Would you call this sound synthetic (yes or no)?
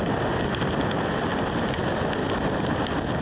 no